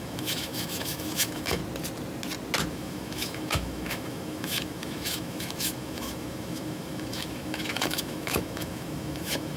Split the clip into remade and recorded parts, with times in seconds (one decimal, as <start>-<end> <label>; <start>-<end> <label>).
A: 0.0-1.6 remade; 1.6-2.7 recorded; 2.7-9.6 remade

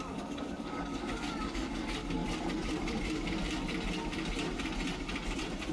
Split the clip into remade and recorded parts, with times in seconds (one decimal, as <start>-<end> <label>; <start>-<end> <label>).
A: 0.0-2.2 remade; 2.2-5.7 recorded

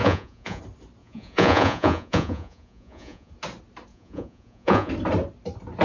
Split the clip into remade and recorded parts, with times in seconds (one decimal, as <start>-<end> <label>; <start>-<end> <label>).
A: 0.0-0.6 remade; 0.6-1.0 recorded; 1.0-3.3 remade; 3.3-3.9 recorded; 3.9-4.9 remade; 4.9-5.8 recorded

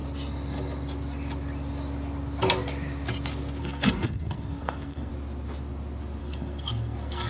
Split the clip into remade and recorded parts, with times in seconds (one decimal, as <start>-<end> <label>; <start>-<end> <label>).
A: 0.0-3.6 recorded; 3.6-5.1 remade; 5.1-6.2 recorded; 6.2-7.3 remade

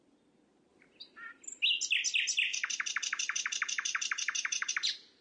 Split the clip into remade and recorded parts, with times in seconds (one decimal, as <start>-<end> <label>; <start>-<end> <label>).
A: 0.0-2.5 recorded; 2.5-4.7 remade; 4.7-5.2 recorded

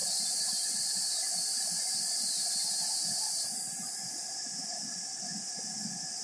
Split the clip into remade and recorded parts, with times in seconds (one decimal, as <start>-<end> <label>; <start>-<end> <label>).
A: 0.0-6.2 recorded

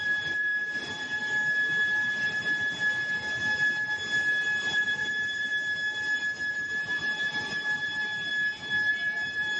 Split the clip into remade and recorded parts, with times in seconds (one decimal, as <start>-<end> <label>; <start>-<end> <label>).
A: 0.0-0.5 remade; 0.5-4.6 recorded; 4.6-5.5 remade; 5.5-6.5 recorded; 6.5-8.3 remade; 8.3-8.9 recorded; 8.9-9.6 remade